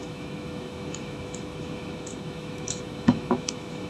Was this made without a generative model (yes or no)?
no